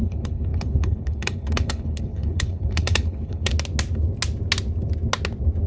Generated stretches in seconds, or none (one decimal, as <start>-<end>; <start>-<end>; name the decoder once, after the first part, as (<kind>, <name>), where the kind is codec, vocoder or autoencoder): 0.0-3.5 (codec, HILCodec)